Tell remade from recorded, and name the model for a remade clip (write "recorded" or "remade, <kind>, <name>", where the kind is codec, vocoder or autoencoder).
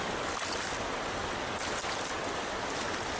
recorded